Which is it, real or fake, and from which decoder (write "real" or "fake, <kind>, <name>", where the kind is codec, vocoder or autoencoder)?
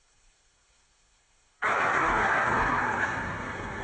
fake, codec, SNAC